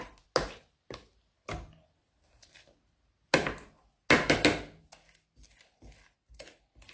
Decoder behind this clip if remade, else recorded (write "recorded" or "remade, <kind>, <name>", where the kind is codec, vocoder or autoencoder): recorded